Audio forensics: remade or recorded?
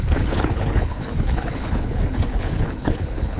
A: remade